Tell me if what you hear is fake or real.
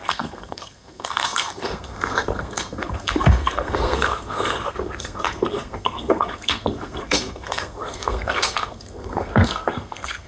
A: fake